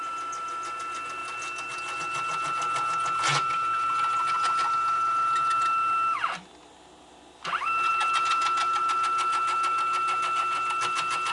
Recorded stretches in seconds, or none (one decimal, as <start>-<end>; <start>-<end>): 0.0-11.3